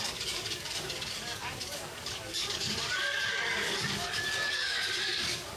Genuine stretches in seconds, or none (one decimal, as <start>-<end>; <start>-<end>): none